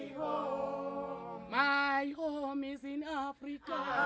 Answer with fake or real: real